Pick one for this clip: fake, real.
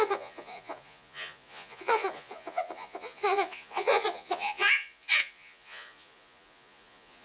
fake